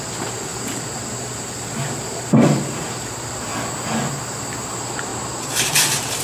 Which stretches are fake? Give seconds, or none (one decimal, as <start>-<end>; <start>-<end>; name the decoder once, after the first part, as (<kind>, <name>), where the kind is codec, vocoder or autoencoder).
0.0-3.5 (vocoder, BigVGAN v2); 4.1-6.2